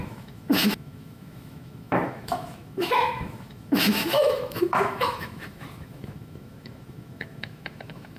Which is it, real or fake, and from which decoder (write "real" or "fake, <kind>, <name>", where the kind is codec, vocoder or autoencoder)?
fake, autoencoder, DAC-VAE